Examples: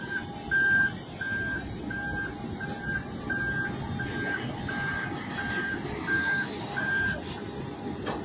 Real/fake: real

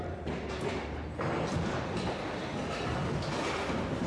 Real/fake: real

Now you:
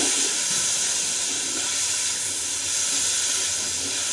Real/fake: real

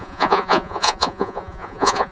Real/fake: fake